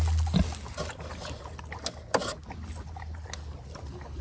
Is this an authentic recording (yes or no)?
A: yes